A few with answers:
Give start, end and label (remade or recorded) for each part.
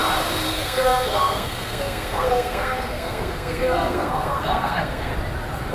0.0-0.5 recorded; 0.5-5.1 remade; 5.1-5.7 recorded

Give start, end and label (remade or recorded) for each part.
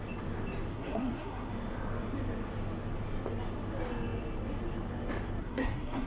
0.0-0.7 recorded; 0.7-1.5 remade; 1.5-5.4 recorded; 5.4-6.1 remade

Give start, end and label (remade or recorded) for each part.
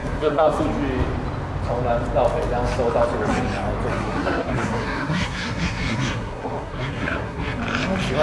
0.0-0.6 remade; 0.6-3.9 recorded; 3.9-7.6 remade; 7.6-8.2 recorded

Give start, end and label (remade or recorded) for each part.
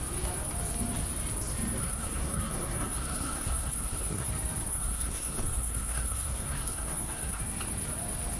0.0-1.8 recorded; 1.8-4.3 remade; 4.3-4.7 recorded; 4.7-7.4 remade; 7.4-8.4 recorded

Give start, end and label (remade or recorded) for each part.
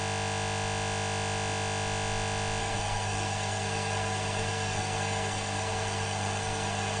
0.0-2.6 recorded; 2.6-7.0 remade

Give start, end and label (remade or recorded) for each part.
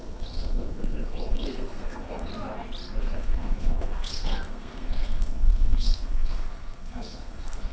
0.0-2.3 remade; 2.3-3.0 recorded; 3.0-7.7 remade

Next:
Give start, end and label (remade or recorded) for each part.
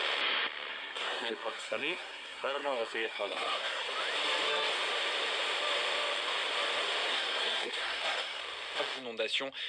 0.0-0.7 recorded; 0.7-3.9 remade; 3.9-7.1 recorded; 7.1-8.4 remade; 8.4-9.7 recorded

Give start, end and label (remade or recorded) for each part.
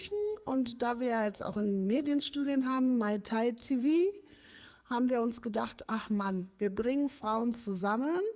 0.0-3.2 remade; 3.2-3.6 recorded; 3.6-7.8 remade; 7.8-8.4 recorded